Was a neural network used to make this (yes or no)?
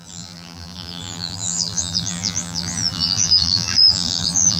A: yes